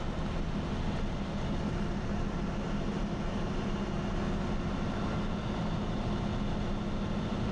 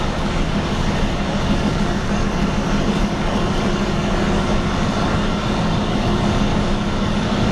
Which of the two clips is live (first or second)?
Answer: first